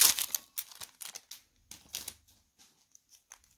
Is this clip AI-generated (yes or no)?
no